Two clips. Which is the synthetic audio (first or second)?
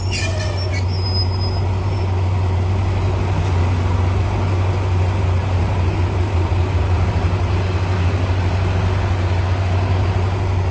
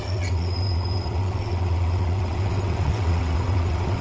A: second